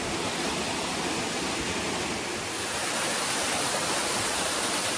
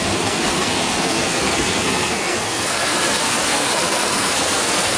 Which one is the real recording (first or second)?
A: first